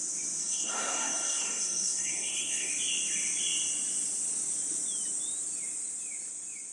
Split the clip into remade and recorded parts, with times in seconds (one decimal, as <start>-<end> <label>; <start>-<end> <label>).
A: 0.0-0.4 recorded; 0.4-2.7 remade; 2.7-6.7 recorded